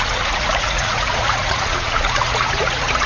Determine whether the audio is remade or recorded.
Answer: remade